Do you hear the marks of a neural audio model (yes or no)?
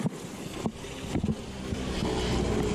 no